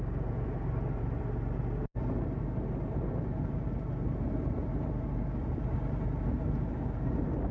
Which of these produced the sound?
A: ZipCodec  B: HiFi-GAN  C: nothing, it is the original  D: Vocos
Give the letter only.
C